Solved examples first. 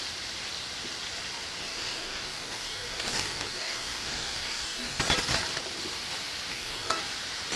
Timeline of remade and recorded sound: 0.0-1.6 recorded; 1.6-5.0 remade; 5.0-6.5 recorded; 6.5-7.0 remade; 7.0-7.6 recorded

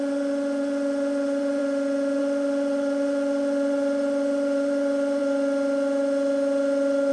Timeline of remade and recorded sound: 0.0-1.6 remade; 1.6-2.2 recorded; 2.2-5.2 remade; 5.2-7.1 recorded

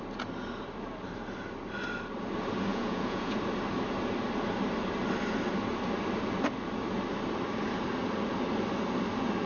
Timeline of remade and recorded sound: 0.0-2.7 recorded; 2.7-3.4 remade; 3.4-9.5 recorded

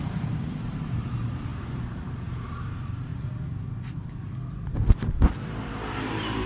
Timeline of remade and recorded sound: 0.0-3.1 remade; 3.1-5.6 recorded; 5.6-6.5 remade

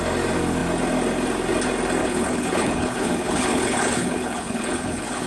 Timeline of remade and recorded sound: 0.0-2.0 recorded; 2.0-5.3 remade

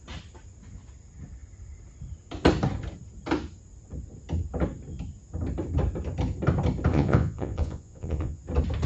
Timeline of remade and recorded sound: 0.0-6.9 recorded; 6.9-8.4 remade; 8.4-8.9 recorded